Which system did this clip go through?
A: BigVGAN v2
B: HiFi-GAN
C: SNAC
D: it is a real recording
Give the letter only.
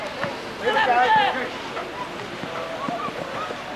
D